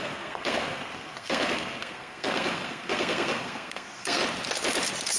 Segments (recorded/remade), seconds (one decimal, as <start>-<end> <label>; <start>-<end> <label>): 0.0-4.2 remade; 4.2-5.2 recorded